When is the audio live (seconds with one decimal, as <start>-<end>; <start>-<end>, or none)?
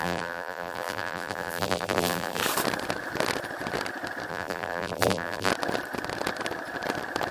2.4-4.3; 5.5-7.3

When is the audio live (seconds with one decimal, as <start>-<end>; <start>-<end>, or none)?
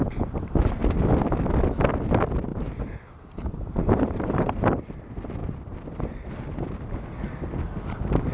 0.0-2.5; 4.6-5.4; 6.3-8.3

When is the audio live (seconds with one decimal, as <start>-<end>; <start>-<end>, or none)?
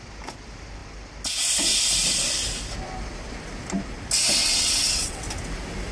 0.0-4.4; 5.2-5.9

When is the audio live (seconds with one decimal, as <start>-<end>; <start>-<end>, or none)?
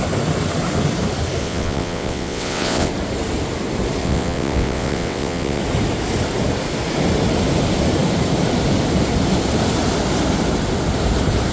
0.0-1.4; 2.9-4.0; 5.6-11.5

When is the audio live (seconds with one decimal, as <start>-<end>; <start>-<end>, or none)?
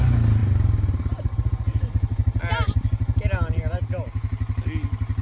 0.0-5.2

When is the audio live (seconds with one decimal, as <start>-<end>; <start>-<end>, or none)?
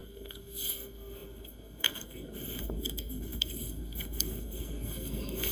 none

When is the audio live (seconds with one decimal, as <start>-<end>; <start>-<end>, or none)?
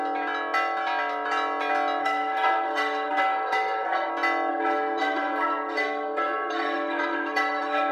0.0-2.0; 4.1-4.5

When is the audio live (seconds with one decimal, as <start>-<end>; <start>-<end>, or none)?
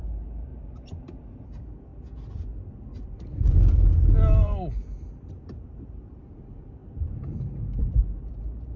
1.9-5.3